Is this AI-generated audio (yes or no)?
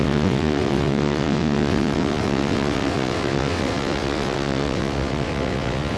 yes